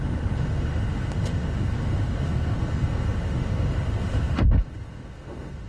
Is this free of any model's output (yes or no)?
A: no